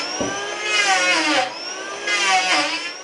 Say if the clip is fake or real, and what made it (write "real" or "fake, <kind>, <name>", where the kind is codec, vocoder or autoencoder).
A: real